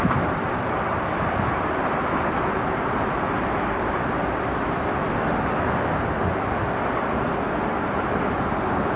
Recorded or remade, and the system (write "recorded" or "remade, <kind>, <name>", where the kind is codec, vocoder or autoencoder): recorded